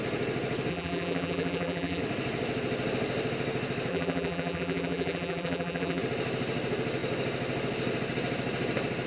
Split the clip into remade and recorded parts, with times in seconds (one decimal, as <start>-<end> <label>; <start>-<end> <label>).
0.0-0.7 recorded; 0.7-2.0 remade; 2.0-3.9 recorded; 3.9-6.0 remade; 6.0-9.1 recorded